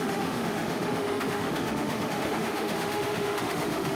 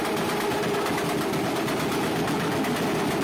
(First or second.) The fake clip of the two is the first